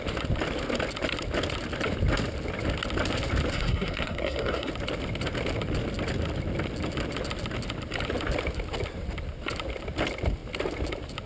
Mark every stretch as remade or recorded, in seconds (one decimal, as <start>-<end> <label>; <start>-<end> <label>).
0.0-3.5 recorded; 3.5-4.7 remade; 4.7-11.3 recorded